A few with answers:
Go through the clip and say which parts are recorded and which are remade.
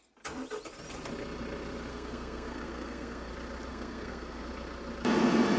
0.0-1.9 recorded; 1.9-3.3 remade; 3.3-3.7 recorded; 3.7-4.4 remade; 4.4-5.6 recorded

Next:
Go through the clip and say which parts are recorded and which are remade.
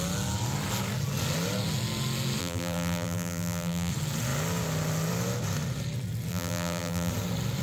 0.0-2.4 recorded; 2.4-3.9 remade; 3.9-6.3 recorded; 6.3-7.1 remade; 7.1-7.6 recorded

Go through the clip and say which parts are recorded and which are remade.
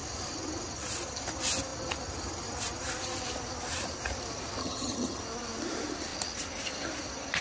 0.0-4.6 recorded; 4.6-5.2 remade; 5.2-7.4 recorded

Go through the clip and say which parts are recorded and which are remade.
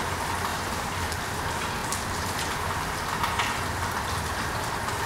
0.0-0.5 recorded; 0.5-1.1 remade; 1.1-5.1 recorded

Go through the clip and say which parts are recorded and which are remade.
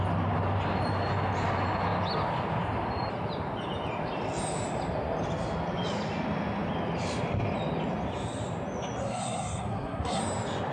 0.0-9.0 recorded; 9.0-10.2 remade; 10.2-10.7 recorded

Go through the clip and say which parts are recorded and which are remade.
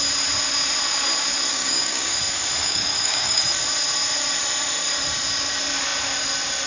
0.0-1.5 recorded; 1.5-2.2 remade; 2.2-2.6 recorded; 2.6-3.4 remade; 3.4-6.7 recorded